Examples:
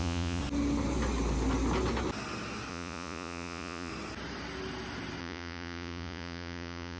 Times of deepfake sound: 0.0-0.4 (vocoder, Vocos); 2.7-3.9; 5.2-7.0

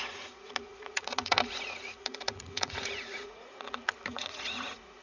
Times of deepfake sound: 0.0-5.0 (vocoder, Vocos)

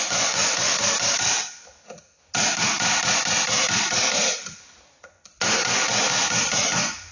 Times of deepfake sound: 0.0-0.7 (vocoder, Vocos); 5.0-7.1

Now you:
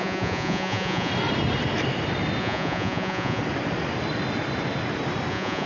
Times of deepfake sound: 0.0-1.1 (vocoder, Vocos); 2.4-3.4; 5.3-5.7

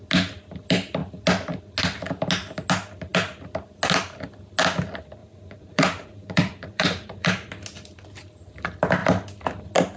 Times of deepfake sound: 5.2-7.5 (vocoder, Vocos)

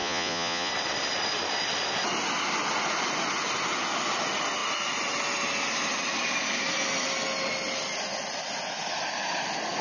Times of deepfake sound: 0.0-0.7 (vocoder, Vocos)

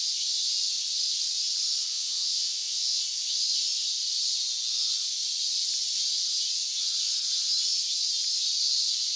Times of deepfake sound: 1.9-3.0 (vocoder, Vocos)